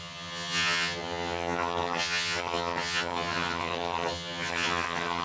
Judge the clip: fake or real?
fake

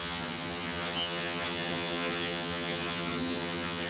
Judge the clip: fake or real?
fake